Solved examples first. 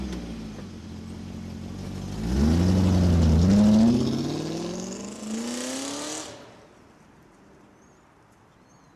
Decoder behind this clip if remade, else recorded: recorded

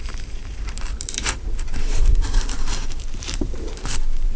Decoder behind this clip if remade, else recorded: remade, vocoder, BigVGAN v2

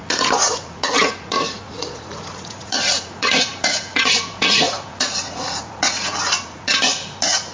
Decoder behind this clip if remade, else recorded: remade, vocoder, Vocos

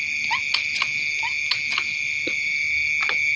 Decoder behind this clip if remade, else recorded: recorded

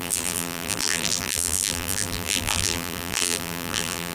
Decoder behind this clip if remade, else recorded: remade, vocoder, BigVGAN v2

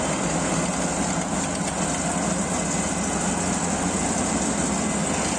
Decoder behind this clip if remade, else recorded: recorded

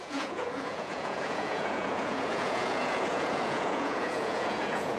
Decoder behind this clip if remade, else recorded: remade, vocoder, Vocos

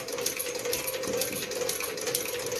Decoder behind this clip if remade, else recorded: recorded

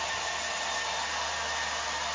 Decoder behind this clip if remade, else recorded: recorded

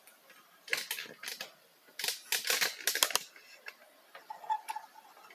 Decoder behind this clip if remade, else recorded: recorded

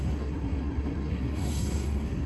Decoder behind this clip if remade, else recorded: remade, codec, SNAC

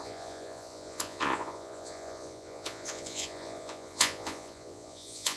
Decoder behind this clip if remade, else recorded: remade, vocoder, Vocos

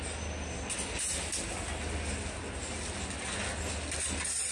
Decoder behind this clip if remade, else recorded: recorded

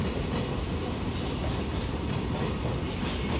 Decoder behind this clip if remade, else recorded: recorded